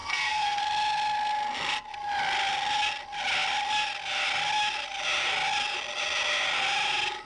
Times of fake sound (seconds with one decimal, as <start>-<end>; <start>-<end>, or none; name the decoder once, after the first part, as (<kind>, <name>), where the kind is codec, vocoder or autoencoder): 0.0-0.6 (codec, SNAC)